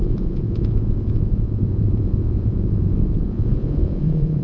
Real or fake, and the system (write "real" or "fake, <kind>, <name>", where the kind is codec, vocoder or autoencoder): fake, vocoder, Vocos